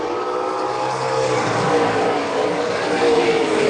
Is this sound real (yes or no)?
no